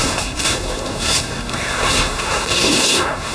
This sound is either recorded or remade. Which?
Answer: remade